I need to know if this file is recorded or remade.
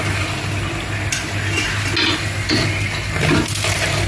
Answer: recorded